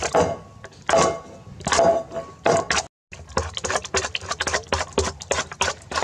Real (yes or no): yes